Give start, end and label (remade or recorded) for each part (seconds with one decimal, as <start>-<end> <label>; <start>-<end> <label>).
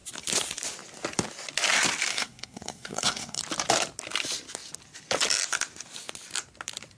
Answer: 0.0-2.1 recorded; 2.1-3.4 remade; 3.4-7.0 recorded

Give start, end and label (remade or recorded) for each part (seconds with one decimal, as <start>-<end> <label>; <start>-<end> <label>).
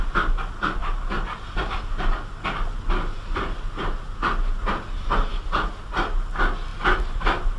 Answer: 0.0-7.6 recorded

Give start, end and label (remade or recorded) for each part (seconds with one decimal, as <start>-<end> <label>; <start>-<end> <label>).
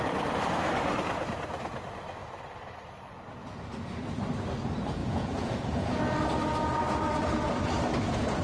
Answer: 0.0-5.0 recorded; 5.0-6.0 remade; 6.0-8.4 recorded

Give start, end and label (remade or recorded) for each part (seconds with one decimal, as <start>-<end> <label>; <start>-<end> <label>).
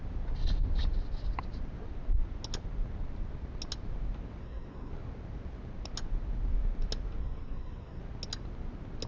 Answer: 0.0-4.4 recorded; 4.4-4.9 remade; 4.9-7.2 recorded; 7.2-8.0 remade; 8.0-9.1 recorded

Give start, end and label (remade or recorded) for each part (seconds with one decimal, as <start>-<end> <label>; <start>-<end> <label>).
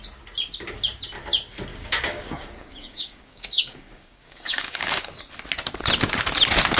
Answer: 0.0-1.7 recorded; 1.7-5.2 remade; 5.2-6.8 recorded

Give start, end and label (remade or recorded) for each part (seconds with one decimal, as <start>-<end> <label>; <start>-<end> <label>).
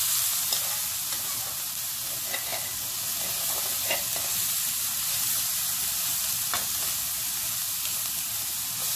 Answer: 0.0-9.0 recorded